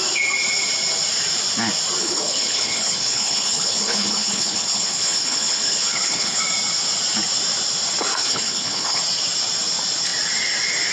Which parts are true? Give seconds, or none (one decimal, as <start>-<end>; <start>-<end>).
0.0-2.0; 6.4-8.2; 9.0-10.9